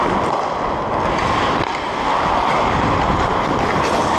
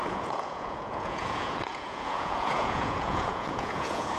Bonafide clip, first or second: first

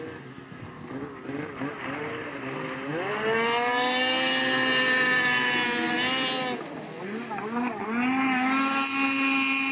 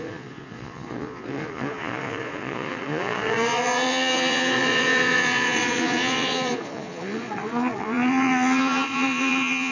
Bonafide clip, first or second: first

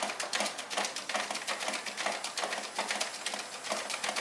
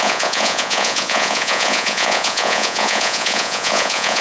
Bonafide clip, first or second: first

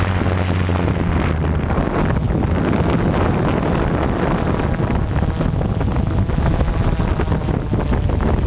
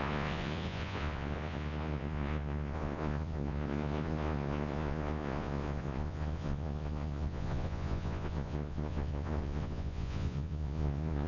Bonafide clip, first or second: first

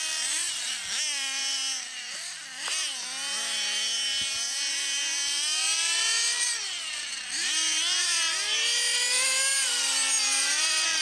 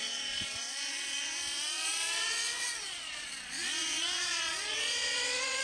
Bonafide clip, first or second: first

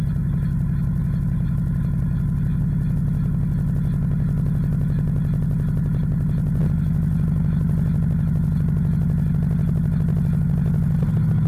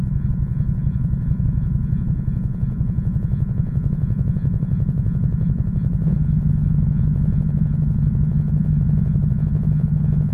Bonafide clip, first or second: first